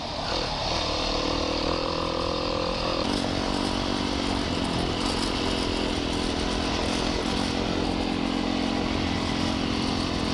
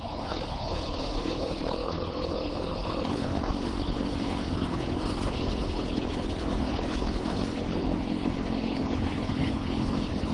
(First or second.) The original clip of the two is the first